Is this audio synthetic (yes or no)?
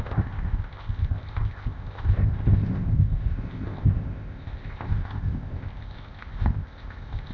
yes